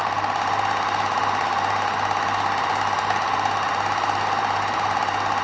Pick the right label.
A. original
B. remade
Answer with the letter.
A